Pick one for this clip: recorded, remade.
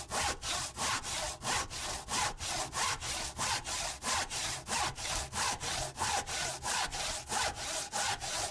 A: recorded